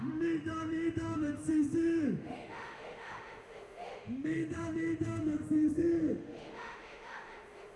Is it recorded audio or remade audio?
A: remade